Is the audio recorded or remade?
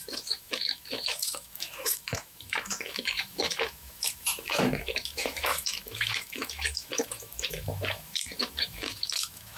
remade